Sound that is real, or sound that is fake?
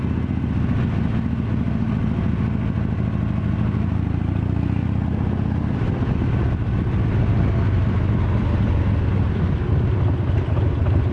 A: real